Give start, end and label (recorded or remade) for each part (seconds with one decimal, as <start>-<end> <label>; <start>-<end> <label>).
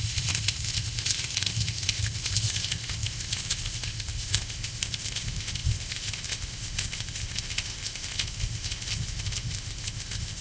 0.0-10.4 remade